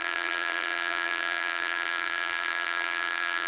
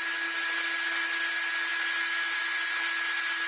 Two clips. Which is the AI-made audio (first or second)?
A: first